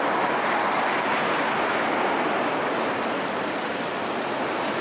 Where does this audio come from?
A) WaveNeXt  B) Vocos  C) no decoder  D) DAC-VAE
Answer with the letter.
C